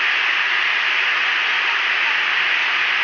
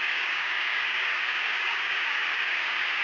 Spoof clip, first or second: second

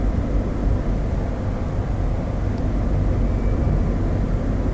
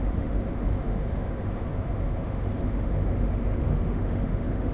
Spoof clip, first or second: second